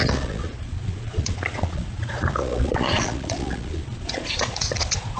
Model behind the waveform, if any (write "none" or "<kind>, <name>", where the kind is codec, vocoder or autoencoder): vocoder, Vocos